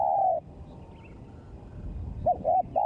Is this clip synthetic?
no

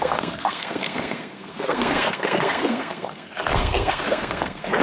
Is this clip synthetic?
yes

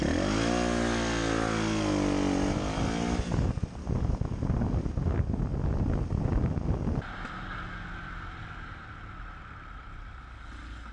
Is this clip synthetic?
no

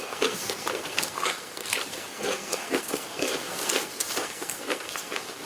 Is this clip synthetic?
yes